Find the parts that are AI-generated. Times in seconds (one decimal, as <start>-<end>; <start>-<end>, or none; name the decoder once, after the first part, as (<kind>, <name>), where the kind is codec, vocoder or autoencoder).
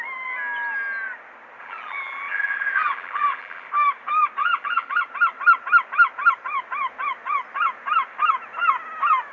1.6-3.7 (vocoder, BigVGAN v2); 4.4-5.0